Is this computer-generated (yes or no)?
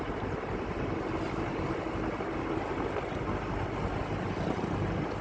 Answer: no